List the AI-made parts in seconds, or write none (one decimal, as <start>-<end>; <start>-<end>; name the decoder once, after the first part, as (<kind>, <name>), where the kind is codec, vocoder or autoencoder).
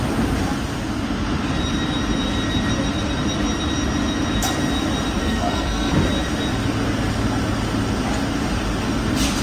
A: 5.2-5.9 (codec, SNAC)